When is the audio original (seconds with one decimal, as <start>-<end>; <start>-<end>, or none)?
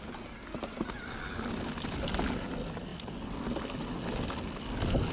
0.0-5.1